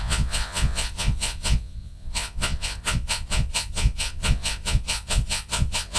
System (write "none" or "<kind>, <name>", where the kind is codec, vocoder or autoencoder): vocoder, Vocos